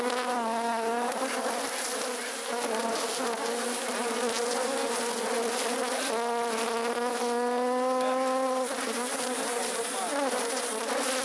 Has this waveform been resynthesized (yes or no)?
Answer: no